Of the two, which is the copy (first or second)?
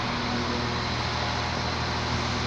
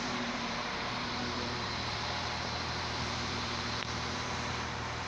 second